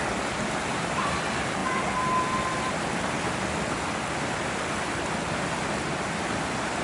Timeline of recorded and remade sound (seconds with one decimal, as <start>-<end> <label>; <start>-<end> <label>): 0.0-6.8 recorded